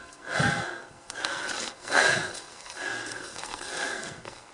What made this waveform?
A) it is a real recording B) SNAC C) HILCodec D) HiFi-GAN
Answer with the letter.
B